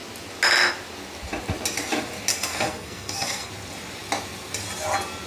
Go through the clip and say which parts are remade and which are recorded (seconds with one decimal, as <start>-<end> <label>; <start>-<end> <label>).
0.0-2.3 recorded; 2.3-3.5 remade; 3.5-5.3 recorded